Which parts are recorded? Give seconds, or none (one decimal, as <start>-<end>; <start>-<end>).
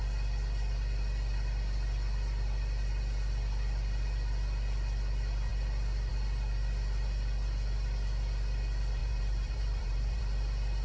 0.0-9.0; 10.2-10.8